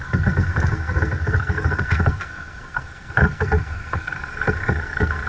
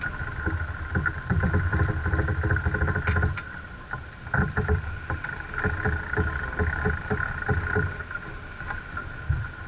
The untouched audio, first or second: second